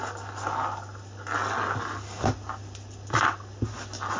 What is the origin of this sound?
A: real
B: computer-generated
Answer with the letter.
A